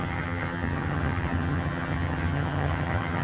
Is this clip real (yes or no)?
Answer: no